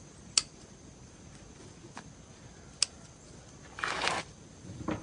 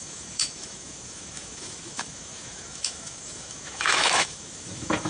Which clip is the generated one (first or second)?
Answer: second